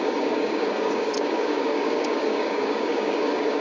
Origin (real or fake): fake